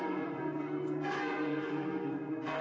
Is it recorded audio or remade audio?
remade